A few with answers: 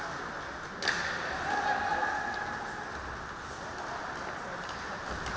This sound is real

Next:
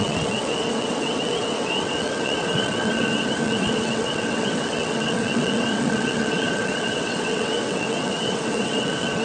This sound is fake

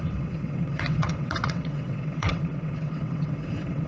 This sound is fake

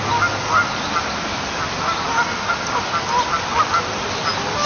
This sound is real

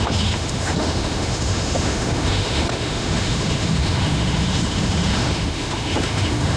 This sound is fake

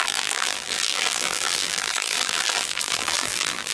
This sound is fake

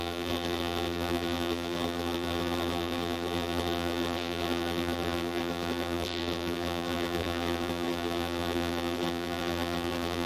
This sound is fake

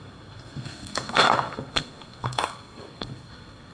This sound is fake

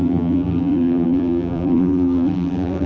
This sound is fake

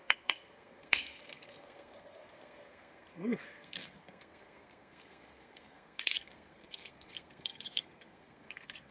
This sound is fake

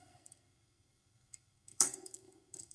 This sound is fake